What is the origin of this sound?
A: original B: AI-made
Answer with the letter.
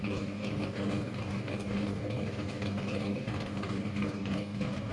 B